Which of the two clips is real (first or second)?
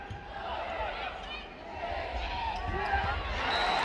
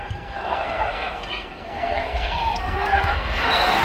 first